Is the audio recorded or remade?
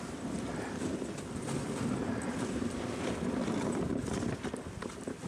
remade